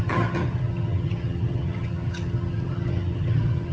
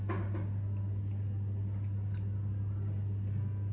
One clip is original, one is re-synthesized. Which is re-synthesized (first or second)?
first